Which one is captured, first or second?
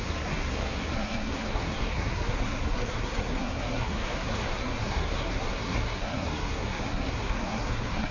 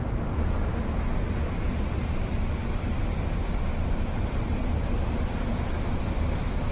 second